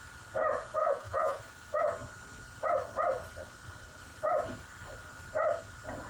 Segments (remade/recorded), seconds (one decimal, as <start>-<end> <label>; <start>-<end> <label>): 0.0-0.8 recorded; 0.8-1.4 remade; 1.4-6.1 recorded